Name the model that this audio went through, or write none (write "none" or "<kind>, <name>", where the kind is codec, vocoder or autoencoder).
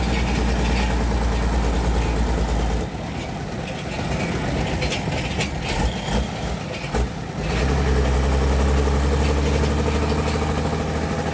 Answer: none